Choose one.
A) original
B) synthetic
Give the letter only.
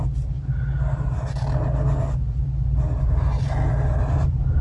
A